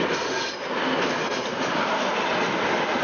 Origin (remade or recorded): recorded